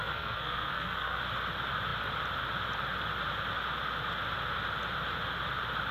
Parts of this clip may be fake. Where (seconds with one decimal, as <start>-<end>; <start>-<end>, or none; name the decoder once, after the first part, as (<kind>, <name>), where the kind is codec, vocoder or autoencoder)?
0.0-1.2 (codec, SNAC)